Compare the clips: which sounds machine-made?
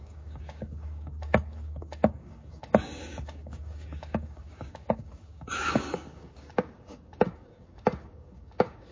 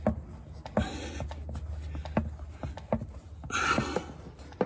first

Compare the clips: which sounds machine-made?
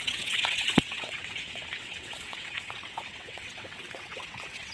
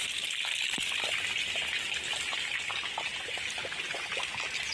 first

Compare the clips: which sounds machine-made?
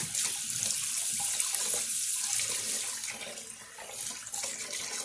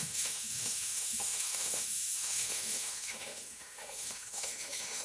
second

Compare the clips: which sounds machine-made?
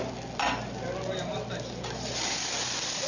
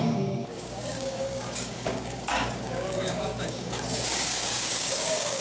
second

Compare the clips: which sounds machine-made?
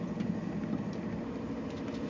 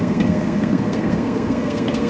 second